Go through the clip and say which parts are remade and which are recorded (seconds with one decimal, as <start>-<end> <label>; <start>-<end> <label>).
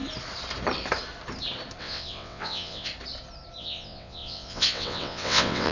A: 0.0-1.8 recorded; 1.8-2.9 remade; 2.9-3.6 recorded; 3.6-5.7 remade